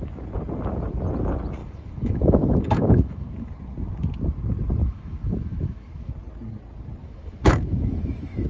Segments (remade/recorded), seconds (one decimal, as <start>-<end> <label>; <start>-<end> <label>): 0.0-1.6 recorded; 1.6-3.5 remade; 3.5-4.8 recorded; 4.8-6.1 remade; 6.1-7.0 recorded; 7.0-8.5 remade